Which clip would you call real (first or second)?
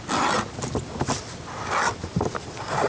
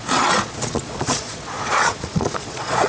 first